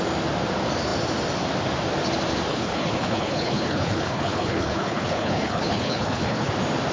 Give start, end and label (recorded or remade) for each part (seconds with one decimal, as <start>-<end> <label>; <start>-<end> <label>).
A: 0.0-2.5 recorded; 2.5-6.5 remade; 6.5-6.9 recorded